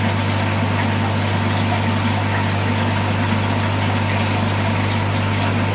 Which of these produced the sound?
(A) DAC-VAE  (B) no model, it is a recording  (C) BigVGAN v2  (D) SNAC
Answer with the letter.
B